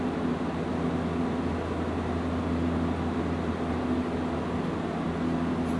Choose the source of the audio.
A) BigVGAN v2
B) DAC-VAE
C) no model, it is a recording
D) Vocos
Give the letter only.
C